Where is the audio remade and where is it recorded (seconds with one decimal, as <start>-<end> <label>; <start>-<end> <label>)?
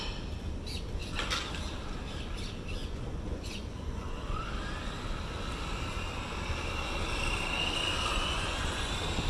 0.0-2.8 recorded; 2.8-4.4 remade; 4.4-8.1 recorded; 8.1-8.9 remade; 8.9-9.3 recorded